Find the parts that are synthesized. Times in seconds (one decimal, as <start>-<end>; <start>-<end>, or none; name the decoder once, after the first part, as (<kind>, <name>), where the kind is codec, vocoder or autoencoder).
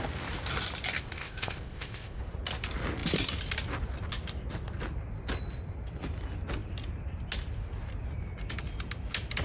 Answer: 1.0-2.2 (codec, ZipCodec)